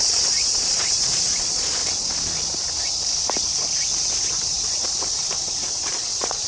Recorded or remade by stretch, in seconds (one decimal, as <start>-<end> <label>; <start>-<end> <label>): 0.0-1.8 remade; 1.8-5.7 recorded; 5.7-6.5 remade